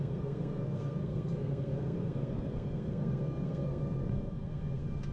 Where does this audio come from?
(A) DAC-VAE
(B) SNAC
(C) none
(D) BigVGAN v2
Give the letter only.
B